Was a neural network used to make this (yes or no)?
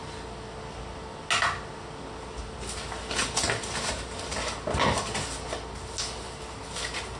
no